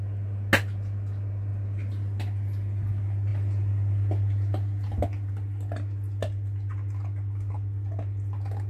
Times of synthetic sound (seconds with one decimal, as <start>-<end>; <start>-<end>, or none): none